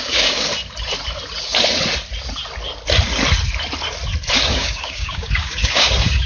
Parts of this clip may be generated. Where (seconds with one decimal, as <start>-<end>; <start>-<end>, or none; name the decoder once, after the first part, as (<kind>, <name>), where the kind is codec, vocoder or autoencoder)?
0.0-0.5 (codec, DAC); 4.3-6.3

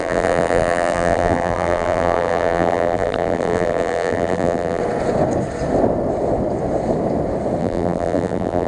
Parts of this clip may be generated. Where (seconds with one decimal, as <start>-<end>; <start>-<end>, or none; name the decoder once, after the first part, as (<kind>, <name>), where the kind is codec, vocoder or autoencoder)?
0.0-4.8 (vocoder, BigVGAN v2); 7.6-8.7

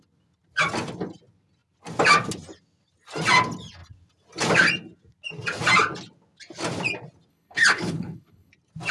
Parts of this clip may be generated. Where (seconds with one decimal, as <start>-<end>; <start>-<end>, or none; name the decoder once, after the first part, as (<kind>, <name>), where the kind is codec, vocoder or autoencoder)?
7.3-8.5 (codec, HILCodec)

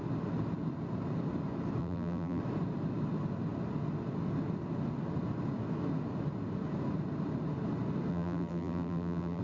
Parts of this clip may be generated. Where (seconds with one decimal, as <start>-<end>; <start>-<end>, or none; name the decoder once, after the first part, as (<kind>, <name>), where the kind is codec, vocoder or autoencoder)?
1.8-2.4 (vocoder, BigVGAN v2); 8.1-9.4